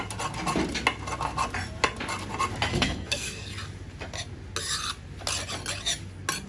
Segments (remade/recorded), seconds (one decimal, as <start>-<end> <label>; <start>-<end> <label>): 0.0-2.7 recorded; 2.7-3.5 remade; 3.5-6.5 recorded